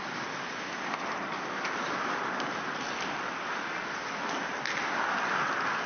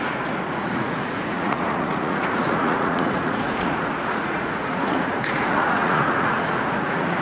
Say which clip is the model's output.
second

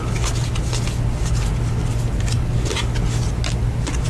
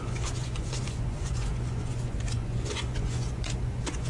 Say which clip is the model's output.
second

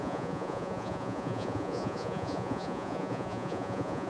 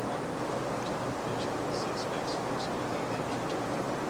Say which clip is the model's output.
first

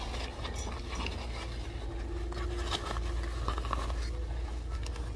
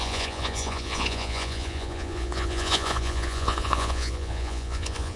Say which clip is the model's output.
second